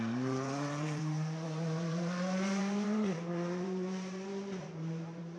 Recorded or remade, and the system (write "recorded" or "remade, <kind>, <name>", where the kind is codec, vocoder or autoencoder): remade, vocoder, BigVGAN v2